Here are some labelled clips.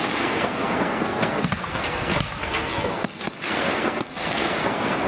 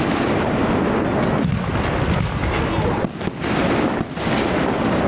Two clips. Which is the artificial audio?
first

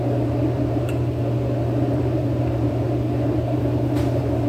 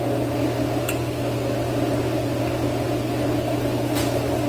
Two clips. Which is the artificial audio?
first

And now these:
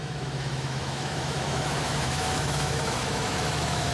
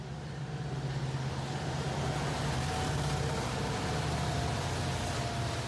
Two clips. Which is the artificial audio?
first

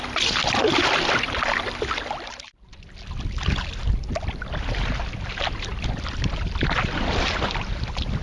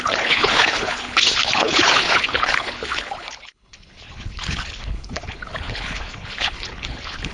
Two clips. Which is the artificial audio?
second